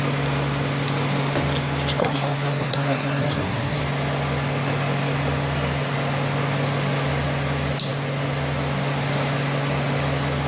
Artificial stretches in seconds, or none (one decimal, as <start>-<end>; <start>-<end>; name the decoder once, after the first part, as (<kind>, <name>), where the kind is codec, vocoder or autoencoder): 2.0-3.8 (codec, SNAC)